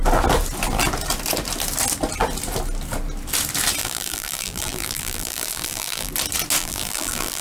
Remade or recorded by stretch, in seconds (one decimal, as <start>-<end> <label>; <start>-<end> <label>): 0.0-3.8 recorded; 3.8-6.1 remade; 6.1-6.6 recorded; 6.6-7.4 remade